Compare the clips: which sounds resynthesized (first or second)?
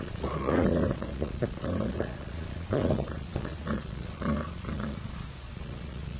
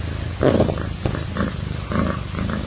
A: first